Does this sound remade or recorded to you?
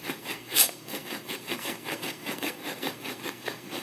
remade